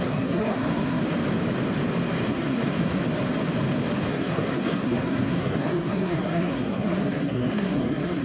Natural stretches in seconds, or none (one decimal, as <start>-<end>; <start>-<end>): 1.0-2.3; 3.0-4.1